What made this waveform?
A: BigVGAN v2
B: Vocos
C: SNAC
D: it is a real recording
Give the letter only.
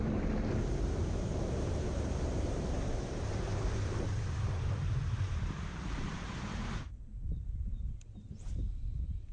A